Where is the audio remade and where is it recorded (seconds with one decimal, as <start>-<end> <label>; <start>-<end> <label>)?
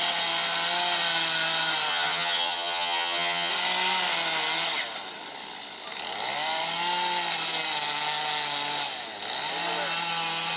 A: 0.0-1.9 recorded; 1.9-3.5 remade; 3.5-10.6 recorded